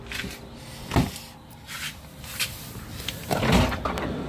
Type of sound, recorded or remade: recorded